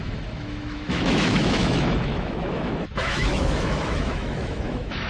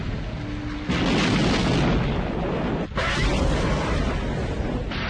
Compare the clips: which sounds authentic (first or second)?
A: second